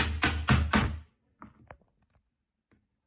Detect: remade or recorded recorded